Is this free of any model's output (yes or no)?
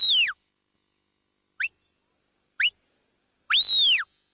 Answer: yes